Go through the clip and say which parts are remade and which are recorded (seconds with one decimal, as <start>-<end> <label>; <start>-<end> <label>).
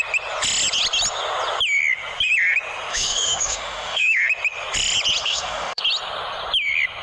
0.0-2.9 recorded; 2.9-4.2 remade; 4.2-5.2 recorded; 5.2-5.8 remade; 5.8-7.0 recorded